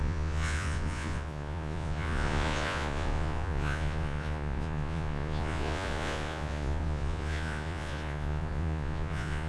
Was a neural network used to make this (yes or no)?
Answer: yes